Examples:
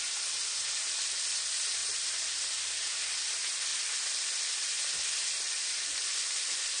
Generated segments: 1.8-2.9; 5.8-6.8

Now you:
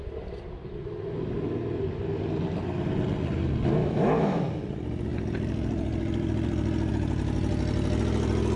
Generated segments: 3.8-4.4

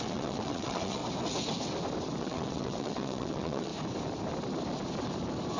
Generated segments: 0.0-1.0; 2.2-3.7

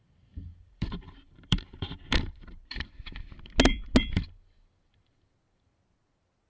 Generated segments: 0.5-2.9

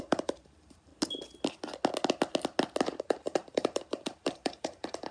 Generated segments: 0.0-0.9; 3.0-5.1

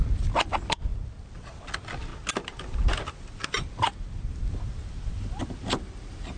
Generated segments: none